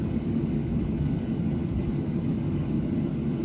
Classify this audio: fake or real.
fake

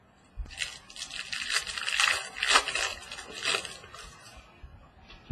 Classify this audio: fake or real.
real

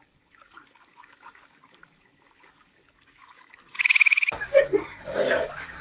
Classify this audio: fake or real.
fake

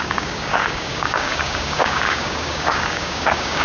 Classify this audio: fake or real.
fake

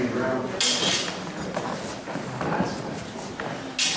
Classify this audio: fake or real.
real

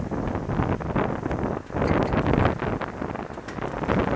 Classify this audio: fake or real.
real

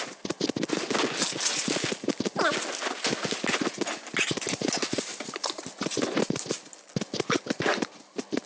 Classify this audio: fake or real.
real